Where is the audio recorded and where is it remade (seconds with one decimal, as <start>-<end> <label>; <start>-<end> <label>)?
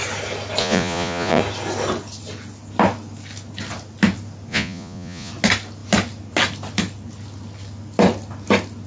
0.0-0.6 recorded; 0.6-1.4 remade; 1.4-4.5 recorded; 4.5-5.3 remade; 5.3-8.9 recorded